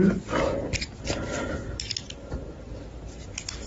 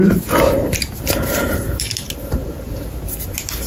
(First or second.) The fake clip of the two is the second